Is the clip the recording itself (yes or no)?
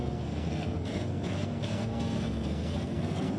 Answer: no